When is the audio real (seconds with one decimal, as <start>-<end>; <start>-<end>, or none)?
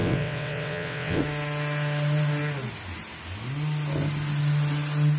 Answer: 1.2-5.2